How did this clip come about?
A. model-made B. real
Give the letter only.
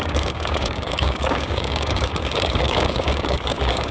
A